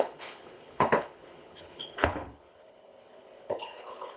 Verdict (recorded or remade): remade